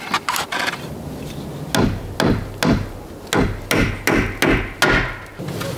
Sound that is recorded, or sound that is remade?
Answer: recorded